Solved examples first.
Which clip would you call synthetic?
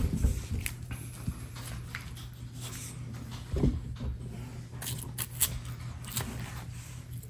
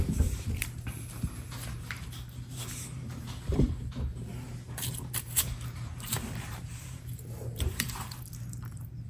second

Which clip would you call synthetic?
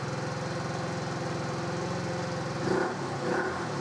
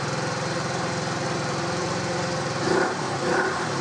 second